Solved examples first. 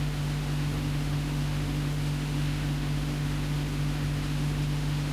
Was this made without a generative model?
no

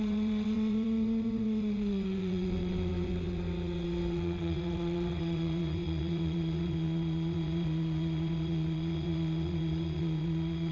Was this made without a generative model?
no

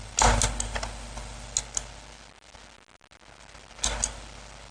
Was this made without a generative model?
yes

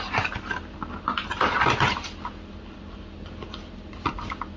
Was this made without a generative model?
no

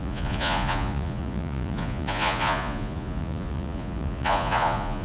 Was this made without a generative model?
no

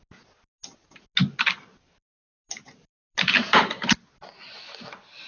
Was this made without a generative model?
yes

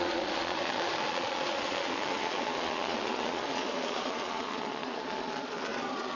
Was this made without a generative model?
no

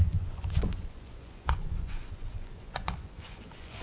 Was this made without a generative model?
no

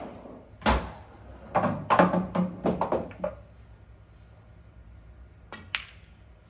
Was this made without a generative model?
yes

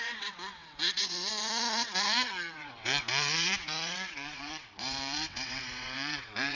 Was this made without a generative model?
no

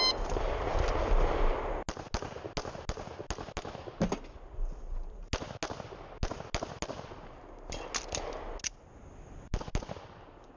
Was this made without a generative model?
yes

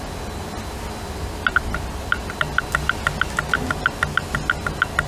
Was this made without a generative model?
yes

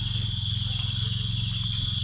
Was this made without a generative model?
yes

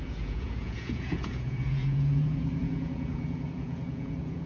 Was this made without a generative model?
no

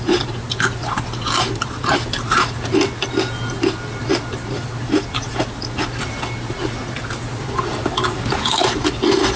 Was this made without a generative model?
yes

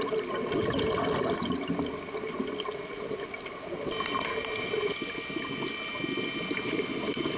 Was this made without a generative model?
yes